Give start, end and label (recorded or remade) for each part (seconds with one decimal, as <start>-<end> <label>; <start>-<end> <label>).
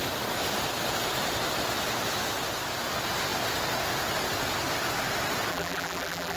0.0-5.5 recorded; 5.5-6.4 remade